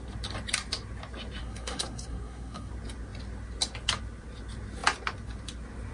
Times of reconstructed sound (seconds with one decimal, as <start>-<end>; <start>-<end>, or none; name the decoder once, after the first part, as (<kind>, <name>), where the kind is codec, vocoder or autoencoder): 1.4-2.7 (codec, SNAC)